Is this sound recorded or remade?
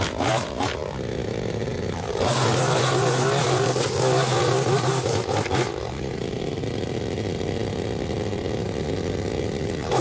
recorded